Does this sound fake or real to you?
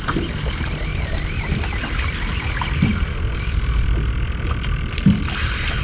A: real